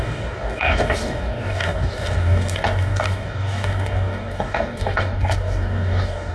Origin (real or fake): fake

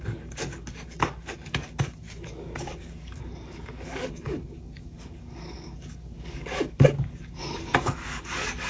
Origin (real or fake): fake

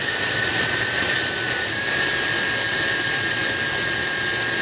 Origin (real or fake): real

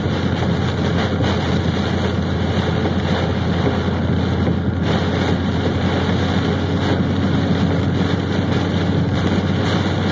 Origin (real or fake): real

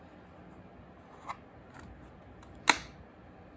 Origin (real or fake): real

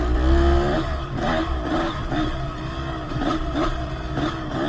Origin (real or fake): real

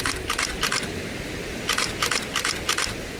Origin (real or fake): real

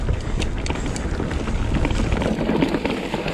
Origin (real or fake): real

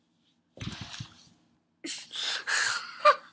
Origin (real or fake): real